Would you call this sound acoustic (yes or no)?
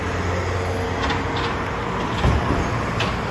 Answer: yes